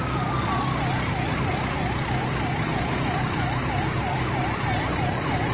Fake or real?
real